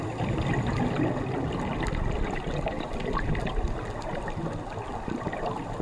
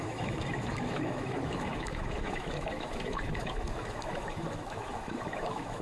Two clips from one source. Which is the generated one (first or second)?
second